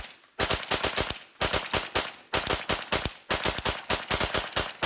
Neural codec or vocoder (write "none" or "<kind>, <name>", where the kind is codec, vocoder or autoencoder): none